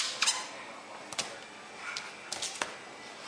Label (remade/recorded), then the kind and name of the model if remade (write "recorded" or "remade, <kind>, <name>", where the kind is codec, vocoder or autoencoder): recorded